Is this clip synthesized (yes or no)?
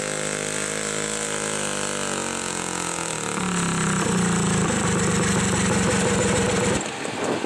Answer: no